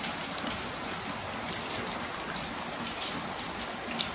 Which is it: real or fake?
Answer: real